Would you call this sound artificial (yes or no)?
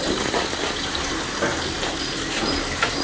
no